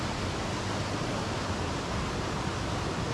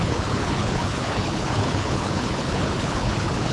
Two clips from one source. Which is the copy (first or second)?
second